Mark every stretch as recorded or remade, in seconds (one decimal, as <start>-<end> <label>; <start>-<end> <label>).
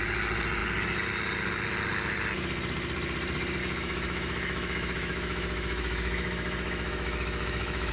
0.0-3.6 recorded; 3.6-7.9 remade